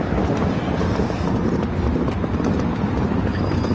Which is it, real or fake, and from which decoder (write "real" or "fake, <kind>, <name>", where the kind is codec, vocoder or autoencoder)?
fake, vocoder, BigVGAN v2